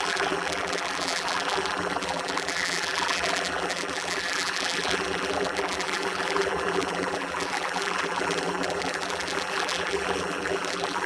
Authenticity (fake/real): fake